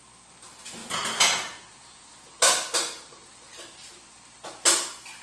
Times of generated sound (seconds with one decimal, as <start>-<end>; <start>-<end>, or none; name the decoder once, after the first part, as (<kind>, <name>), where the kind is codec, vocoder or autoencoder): 0.8-2.3 (vocoder, Vocos)